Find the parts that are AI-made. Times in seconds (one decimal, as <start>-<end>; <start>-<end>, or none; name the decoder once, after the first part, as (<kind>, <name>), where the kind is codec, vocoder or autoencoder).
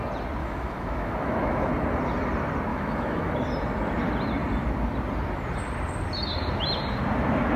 0.4-1.7 (autoencoder, DAC-VAE); 2.7-3.3